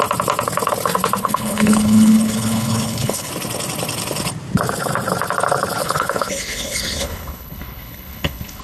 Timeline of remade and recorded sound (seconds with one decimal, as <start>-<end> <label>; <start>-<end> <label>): 0.0-1.2 recorded; 1.2-3.3 remade; 3.3-5.8 recorded; 5.8-8.6 remade